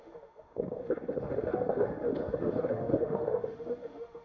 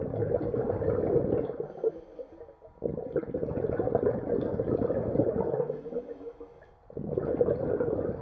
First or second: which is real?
second